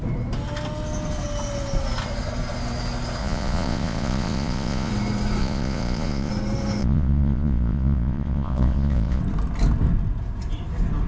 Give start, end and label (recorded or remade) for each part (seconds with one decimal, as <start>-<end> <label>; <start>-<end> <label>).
0.0-3.2 recorded; 3.2-4.9 remade; 4.9-5.4 recorded; 5.4-6.3 remade; 6.3-6.8 recorded; 6.8-9.2 remade; 9.2-11.1 recorded